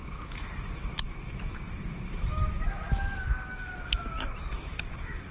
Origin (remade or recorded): remade